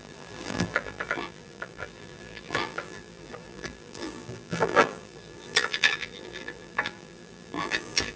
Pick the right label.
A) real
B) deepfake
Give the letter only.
B